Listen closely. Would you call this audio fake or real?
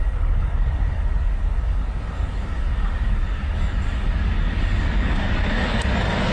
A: fake